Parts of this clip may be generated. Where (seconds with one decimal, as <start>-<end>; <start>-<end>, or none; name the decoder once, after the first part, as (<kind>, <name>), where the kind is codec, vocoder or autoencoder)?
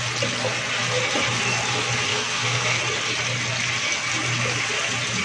2.1-2.8 (codec, SNAC)